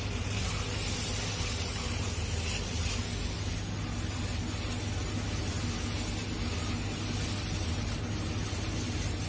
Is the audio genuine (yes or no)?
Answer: yes